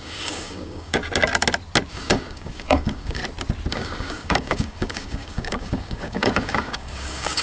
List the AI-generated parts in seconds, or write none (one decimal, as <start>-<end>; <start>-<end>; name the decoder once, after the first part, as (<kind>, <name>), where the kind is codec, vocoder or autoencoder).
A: 0.0-1.0 (codec, DAC); 1.9-3.2; 3.7-7.4